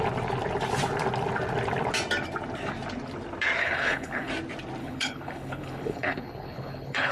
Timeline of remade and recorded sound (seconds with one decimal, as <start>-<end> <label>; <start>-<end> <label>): 0.0-3.6 recorded; 3.6-4.3 remade; 4.3-4.8 recorded; 4.8-7.1 remade